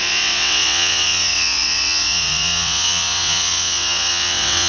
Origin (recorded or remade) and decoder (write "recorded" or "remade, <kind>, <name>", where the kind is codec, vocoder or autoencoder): remade, vocoder, WaveNeXt